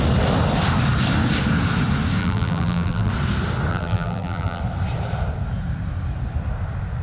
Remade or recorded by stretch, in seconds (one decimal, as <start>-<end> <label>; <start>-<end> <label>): 0.0-2.2 recorded; 2.2-3.1 remade; 3.1-3.7 recorded; 3.7-4.6 remade; 4.6-7.0 recorded